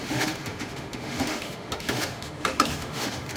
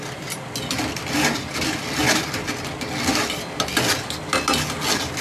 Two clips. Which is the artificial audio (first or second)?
first